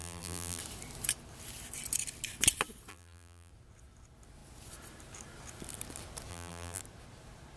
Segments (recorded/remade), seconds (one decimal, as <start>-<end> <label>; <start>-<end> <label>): 0.0-0.6 remade; 0.6-2.9 recorded; 2.9-3.5 remade; 3.5-6.3 recorded; 6.3-6.8 remade; 6.8-7.6 recorded